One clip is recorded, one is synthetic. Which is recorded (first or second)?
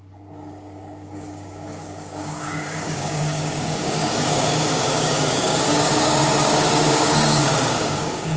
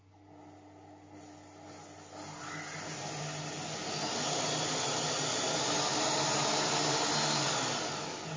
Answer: second